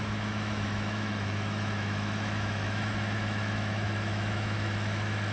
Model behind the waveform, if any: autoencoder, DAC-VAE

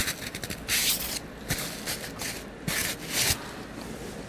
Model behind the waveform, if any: none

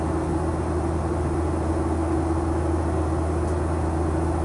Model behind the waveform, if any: none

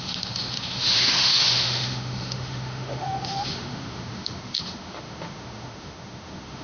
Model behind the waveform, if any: autoencoder, DAC-VAE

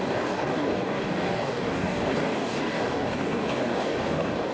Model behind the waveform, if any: codec, DAC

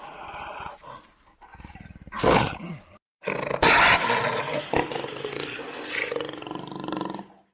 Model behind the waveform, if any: none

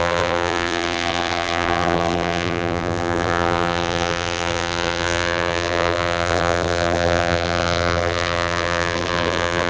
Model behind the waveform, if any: vocoder, BigVGAN v2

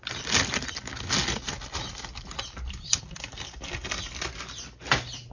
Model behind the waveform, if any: none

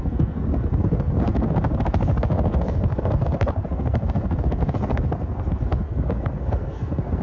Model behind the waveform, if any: codec, SNAC